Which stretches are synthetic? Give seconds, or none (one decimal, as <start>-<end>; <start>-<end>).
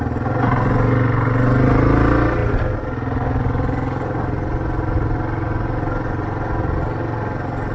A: none